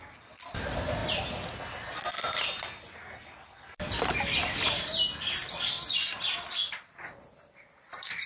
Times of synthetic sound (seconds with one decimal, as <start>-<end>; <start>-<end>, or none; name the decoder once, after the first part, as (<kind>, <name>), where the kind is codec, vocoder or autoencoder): none